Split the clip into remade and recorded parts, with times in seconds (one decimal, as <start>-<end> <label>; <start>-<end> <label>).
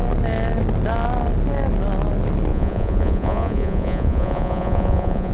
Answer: 0.0-2.5 recorded; 2.5-5.3 remade